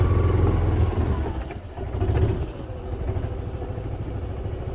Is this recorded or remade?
recorded